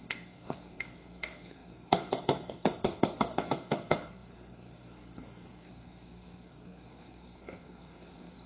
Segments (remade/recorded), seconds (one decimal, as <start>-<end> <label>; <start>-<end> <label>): 0.0-8.5 remade